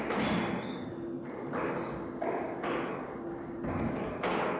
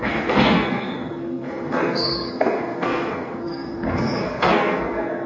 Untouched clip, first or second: first